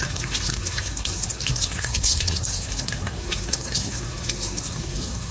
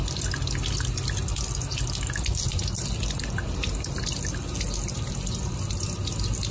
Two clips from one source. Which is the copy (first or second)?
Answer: first